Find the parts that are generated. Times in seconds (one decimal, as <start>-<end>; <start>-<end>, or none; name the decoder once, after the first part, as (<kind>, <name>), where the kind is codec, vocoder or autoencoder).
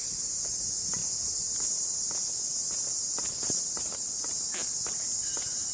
none